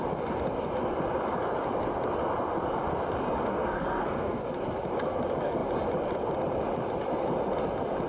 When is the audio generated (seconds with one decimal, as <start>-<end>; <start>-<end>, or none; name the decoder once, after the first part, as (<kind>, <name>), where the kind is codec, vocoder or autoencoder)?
3.5-4.5 (codec, SNAC)